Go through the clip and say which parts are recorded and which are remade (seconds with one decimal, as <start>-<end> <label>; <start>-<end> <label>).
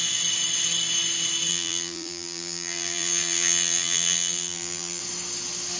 0.0-1.5 recorded; 1.5-5.0 remade; 5.0-5.8 recorded